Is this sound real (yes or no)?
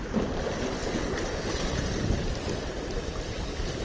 yes